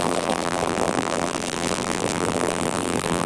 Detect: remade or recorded remade